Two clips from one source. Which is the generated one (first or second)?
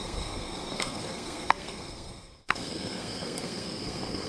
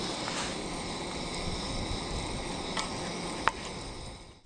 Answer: first